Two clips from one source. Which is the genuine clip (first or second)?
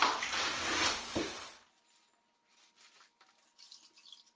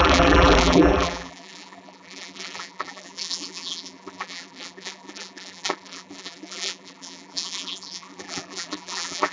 first